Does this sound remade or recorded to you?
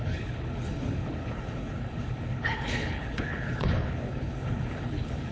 remade